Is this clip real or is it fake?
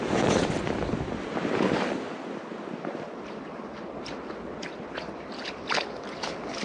real